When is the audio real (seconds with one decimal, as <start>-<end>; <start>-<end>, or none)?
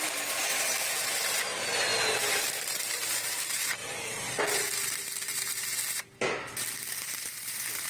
1.9-2.4; 5.8-6.9